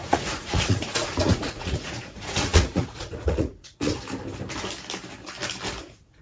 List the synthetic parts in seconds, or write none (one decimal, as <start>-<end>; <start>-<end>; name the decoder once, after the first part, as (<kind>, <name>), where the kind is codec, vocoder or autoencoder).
0.0-3.9 (vocoder, Vocos); 5.8-6.2

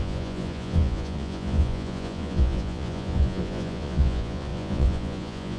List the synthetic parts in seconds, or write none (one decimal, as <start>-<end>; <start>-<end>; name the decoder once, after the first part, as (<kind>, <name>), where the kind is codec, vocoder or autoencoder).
0.0-5.6 (vocoder, Vocos)